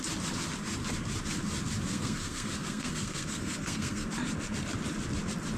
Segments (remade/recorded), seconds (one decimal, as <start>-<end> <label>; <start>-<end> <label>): 0.0-1.9 recorded; 1.9-4.1 remade; 4.1-5.6 recorded